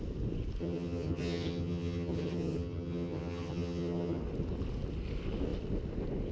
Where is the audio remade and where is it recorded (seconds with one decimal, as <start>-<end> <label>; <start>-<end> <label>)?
0.0-0.6 recorded; 0.6-4.2 remade; 4.2-6.3 recorded